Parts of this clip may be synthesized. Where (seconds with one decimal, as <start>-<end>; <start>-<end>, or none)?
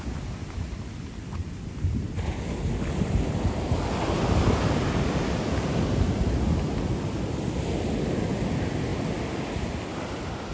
none